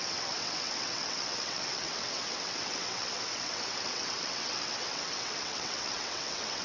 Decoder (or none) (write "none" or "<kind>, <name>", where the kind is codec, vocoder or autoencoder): vocoder, WaveNeXt